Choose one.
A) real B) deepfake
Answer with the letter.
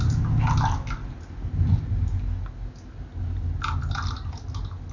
A